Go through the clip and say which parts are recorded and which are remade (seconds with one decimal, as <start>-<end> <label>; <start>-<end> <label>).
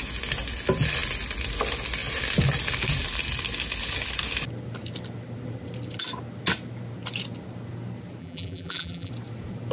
0.0-8.2 recorded; 8.2-9.1 remade; 9.1-9.7 recorded